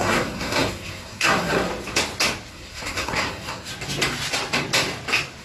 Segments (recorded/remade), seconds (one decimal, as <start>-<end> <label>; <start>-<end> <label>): 0.0-1.7 remade; 1.7-2.5 recorded; 2.5-3.7 remade; 3.7-5.4 recorded